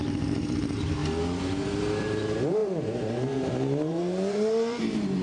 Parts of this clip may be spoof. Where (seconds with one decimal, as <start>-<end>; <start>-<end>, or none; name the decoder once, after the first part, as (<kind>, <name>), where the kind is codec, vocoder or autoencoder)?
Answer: 0.0-1.0 (vocoder, BigVGAN v2); 2.0-5.2